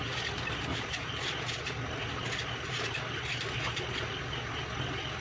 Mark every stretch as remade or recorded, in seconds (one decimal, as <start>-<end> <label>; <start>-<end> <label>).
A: 0.0-5.2 recorded